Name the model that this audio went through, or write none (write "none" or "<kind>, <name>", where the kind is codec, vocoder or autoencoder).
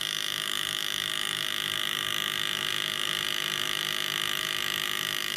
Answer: autoencoder, DAC-VAE